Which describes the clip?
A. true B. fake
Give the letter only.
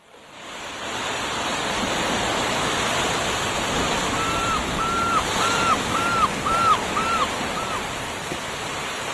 B